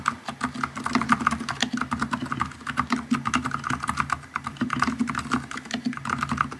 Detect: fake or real real